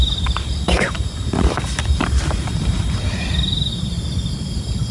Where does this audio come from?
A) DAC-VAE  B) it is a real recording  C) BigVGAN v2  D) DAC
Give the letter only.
C